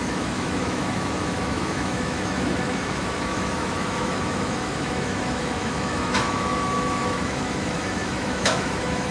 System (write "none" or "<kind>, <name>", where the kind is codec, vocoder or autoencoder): autoencoder, DAC-VAE